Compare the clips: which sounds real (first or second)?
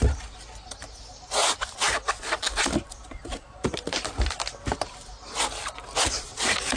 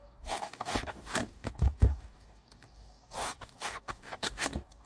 first